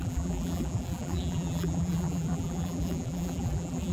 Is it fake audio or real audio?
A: fake